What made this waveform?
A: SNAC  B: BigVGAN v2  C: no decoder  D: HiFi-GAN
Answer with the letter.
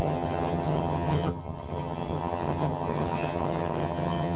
D